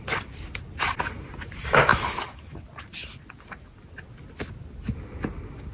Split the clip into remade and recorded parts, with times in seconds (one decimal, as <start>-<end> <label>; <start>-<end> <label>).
0.0-5.7 recorded